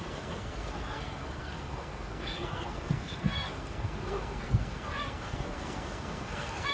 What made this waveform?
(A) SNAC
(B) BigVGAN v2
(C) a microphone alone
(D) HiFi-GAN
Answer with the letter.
A